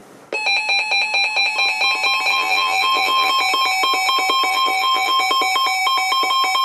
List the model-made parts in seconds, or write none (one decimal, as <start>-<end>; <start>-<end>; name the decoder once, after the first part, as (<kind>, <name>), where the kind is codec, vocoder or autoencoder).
2.3-3.3 (vocoder, BigVGAN v2); 4.5-5.2